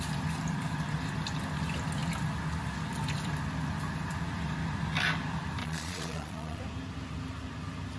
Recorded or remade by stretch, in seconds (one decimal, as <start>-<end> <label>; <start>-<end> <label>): 0.0-5.6 recorded; 5.6-6.6 remade; 6.6-8.0 recorded